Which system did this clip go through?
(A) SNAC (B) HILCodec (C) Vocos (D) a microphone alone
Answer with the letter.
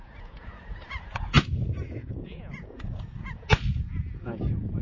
C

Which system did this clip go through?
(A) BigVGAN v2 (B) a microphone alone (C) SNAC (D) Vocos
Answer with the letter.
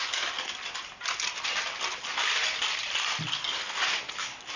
B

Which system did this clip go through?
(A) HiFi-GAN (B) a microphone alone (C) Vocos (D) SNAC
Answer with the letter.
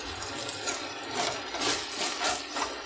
B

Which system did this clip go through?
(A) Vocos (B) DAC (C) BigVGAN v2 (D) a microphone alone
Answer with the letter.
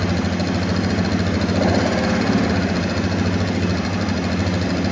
D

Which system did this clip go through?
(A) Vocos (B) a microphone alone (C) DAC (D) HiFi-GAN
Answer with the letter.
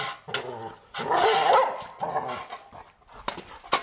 B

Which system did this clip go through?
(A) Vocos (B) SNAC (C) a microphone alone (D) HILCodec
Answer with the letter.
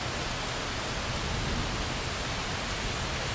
C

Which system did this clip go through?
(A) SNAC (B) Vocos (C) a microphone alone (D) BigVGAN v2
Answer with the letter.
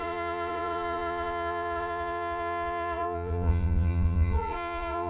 B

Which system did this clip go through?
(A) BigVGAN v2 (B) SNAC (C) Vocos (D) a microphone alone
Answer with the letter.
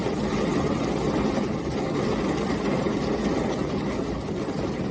D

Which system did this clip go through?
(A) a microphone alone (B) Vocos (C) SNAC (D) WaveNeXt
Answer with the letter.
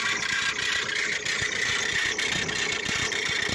A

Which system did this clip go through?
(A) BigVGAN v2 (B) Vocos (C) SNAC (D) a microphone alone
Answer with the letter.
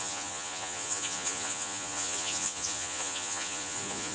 B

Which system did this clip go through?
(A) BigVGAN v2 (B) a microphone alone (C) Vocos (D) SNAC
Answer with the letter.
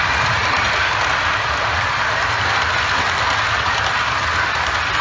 B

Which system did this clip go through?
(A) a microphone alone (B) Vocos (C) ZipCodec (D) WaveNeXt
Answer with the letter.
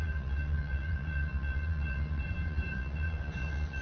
B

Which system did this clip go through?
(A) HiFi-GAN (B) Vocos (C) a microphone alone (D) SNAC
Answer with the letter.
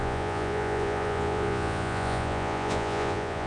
B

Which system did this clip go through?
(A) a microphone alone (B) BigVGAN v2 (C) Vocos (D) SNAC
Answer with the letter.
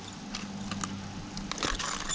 A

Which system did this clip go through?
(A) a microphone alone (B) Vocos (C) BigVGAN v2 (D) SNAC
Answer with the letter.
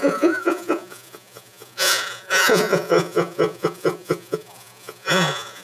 B